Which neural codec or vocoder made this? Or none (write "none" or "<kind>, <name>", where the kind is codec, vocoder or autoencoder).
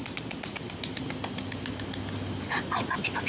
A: none